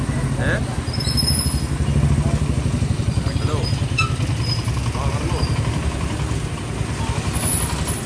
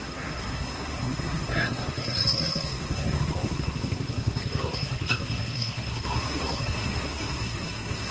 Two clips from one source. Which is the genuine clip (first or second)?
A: first